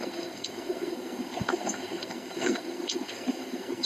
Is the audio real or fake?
fake